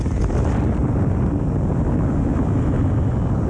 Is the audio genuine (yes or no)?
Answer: yes